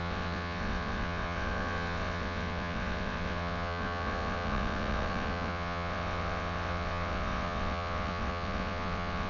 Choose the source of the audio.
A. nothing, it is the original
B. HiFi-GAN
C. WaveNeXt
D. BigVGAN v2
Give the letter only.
C